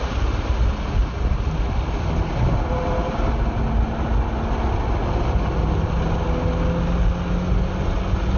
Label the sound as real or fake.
real